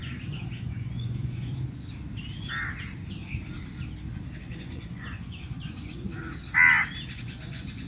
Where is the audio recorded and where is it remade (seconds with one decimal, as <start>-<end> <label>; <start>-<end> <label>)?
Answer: 0.0-1.5 remade; 1.5-4.4 recorded; 4.4-6.1 remade; 6.1-7.1 recorded; 7.1-7.9 remade